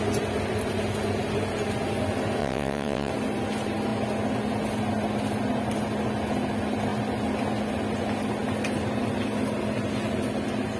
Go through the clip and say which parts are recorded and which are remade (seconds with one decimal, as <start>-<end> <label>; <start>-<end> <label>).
0.0-2.4 recorded; 2.4-3.1 remade; 3.1-10.8 recorded